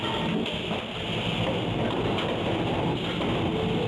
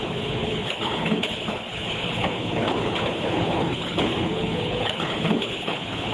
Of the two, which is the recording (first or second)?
first